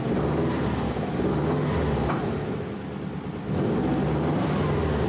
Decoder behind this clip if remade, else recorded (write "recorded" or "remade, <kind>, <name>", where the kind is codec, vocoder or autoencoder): recorded